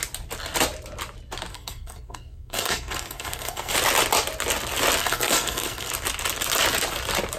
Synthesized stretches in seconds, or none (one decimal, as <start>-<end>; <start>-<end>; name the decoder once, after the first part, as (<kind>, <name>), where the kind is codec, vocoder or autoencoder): 1.5-3.7 (codec, SNAC); 5.0-5.9